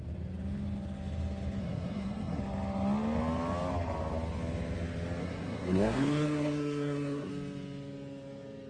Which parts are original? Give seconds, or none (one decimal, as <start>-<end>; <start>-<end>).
0.0-1.6; 2.4-5.2; 7.3-8.7